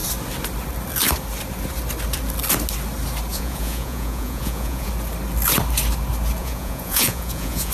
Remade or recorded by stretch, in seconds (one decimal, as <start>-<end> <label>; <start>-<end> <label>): 0.0-3.3 recorded; 3.3-4.9 remade; 4.9-6.4 recorded; 6.4-7.7 remade